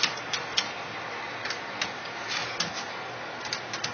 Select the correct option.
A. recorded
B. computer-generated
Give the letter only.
A